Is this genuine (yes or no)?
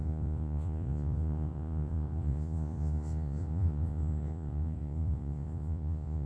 no